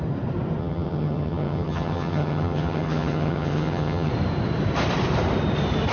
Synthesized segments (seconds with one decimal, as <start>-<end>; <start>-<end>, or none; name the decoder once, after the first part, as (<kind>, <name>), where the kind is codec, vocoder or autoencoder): 0.6-4.1 (vocoder, HiFi-GAN)